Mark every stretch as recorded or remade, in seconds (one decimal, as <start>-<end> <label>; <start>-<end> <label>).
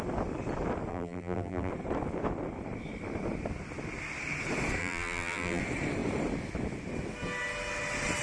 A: 0.0-0.9 recorded; 0.9-1.7 remade; 1.7-4.8 recorded; 4.8-5.6 remade; 5.6-8.2 recorded